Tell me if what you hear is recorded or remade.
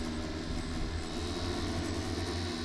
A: recorded